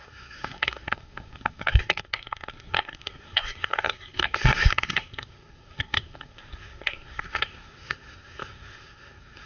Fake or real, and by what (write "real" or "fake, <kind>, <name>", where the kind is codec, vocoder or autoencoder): fake, codec, SNAC